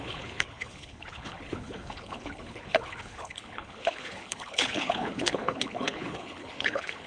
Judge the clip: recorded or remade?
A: remade